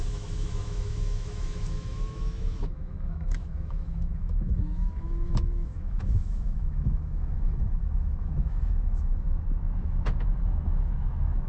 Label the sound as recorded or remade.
remade